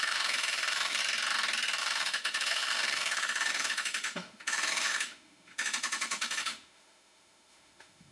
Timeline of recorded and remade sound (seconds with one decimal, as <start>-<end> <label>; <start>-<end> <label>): 0.0-1.0 remade; 1.0-1.8 recorded; 1.8-8.1 remade